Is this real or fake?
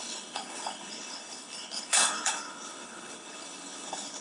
fake